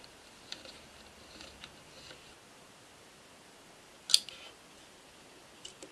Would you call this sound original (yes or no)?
yes